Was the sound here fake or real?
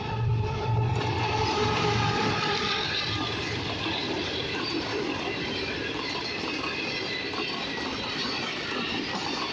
fake